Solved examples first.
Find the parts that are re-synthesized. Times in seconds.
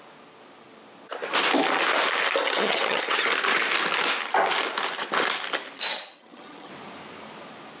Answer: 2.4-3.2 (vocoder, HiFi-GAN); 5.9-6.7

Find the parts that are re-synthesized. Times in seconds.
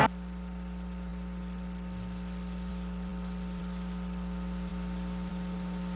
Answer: none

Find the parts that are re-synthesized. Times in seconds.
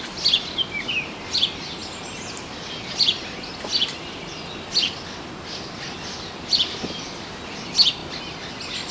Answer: none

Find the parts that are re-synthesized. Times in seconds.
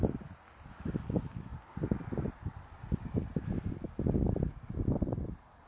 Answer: none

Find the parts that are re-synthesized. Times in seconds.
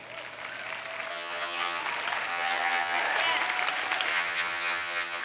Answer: 1.1-1.8 (vocoder, HiFi-GAN); 2.3-3.0; 4.1-5.2